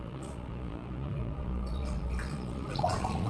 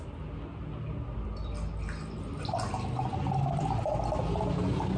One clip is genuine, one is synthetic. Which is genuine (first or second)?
second